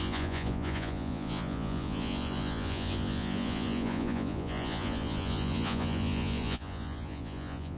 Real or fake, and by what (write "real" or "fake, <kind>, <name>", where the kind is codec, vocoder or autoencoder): fake, vocoder, Vocos